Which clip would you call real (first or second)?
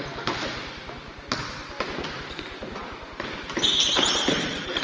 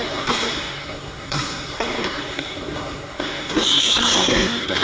first